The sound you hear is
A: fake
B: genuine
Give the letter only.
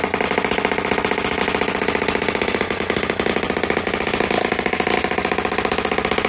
B